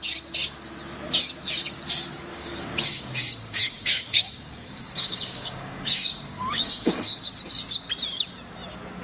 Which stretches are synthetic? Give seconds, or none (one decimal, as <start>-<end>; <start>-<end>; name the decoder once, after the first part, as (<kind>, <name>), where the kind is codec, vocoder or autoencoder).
2.3-7.2 (codec, DAC)